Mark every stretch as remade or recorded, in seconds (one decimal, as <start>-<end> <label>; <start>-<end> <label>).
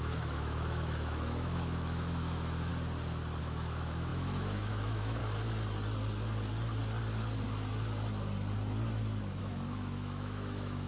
0.0-2.7 remade; 2.7-3.4 recorded; 3.4-5.2 remade; 5.2-9.4 recorded; 9.4-10.9 remade